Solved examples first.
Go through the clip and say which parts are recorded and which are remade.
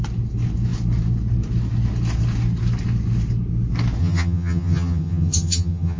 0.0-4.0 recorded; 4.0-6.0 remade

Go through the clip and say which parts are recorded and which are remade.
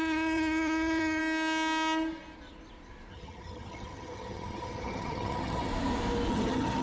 0.0-1.2 remade; 1.2-3.1 recorded; 3.1-5.7 remade; 5.7-6.3 recorded; 6.3-6.8 remade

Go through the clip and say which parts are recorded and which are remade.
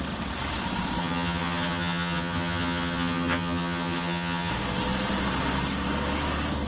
0.0-1.0 recorded; 1.0-4.5 remade; 4.5-6.7 recorded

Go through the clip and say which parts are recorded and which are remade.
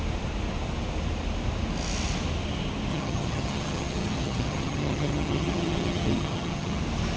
0.0-2.9 recorded; 2.9-6.8 remade; 6.8-7.2 recorded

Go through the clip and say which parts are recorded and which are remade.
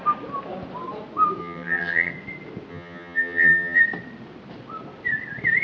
0.0-1.4 recorded; 1.4-2.1 remade; 2.1-2.7 recorded; 2.7-3.8 remade; 3.8-5.6 recorded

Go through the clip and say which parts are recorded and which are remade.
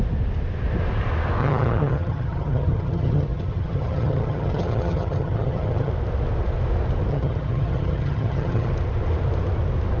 0.0-1.4 recorded; 1.4-5.9 remade; 5.9-7.1 recorded; 7.1-8.7 remade; 8.7-10.0 recorded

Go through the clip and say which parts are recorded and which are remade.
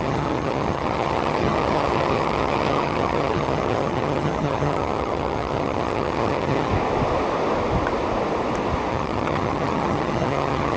0.0-6.7 remade; 6.7-8.9 recorded; 8.9-10.8 remade